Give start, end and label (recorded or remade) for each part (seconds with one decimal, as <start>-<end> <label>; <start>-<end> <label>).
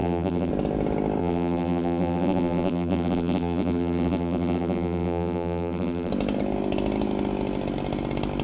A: 0.0-0.5 remade; 0.5-1.2 recorded; 1.2-6.1 remade; 6.1-8.4 recorded